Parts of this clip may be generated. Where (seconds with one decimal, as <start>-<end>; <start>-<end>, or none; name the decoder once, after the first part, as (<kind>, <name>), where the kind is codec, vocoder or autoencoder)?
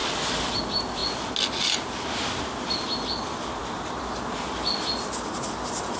none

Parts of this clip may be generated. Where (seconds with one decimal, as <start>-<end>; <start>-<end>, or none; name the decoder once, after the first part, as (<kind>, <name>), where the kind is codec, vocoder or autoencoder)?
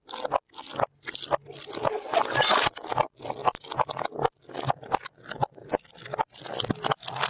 none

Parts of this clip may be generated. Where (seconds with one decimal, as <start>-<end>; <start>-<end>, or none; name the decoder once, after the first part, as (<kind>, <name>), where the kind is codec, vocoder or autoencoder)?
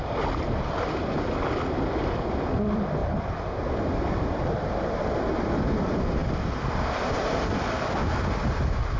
none